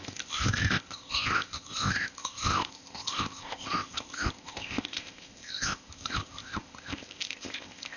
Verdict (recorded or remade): remade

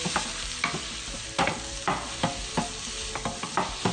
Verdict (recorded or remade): recorded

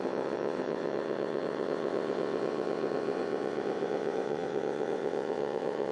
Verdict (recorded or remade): remade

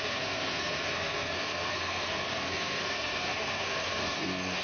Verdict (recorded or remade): remade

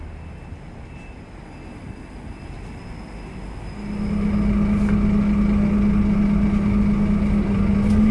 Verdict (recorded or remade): recorded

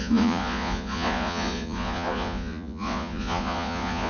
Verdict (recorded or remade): remade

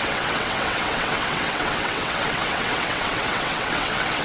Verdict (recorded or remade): remade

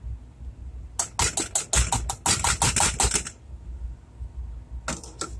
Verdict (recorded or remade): recorded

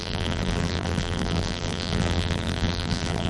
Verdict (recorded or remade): remade